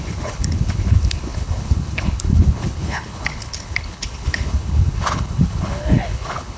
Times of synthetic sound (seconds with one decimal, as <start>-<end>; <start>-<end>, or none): 0.0-6.6